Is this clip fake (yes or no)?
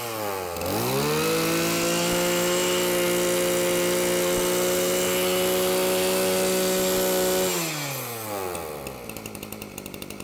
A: no